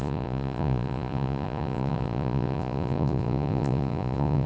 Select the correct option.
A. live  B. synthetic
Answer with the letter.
B